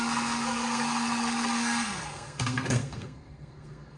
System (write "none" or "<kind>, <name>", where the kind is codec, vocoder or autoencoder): codec, SNAC